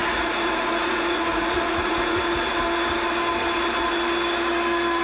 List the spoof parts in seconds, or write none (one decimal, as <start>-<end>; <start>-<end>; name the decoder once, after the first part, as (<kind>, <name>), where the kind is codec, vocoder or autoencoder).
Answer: 0.0-2.2 (vocoder, Vocos)